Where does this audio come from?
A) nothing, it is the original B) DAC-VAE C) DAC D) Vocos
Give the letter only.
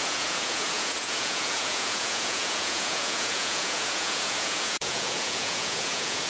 D